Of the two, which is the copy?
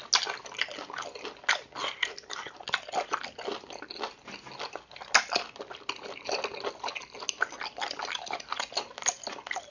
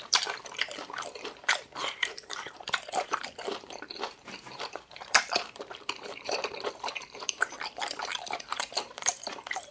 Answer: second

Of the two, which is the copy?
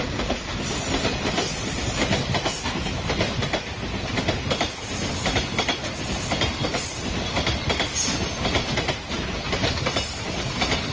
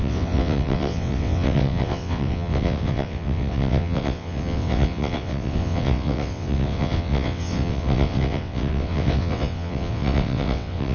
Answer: second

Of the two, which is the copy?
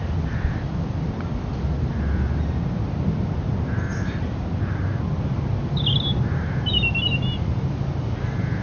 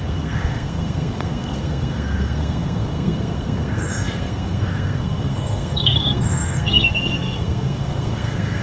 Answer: second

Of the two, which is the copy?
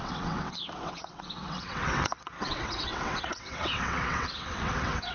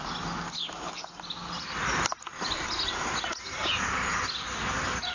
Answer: first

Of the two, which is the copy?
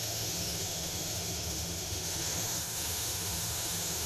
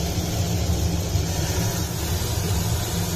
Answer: first